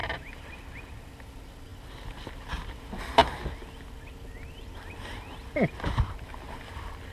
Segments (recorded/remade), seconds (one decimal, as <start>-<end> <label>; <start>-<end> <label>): 0.0-1.1 remade; 1.1-1.7 recorded; 1.7-2.3 remade; 2.3-7.1 recorded